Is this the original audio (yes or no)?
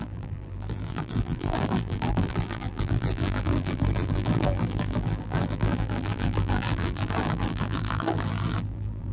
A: no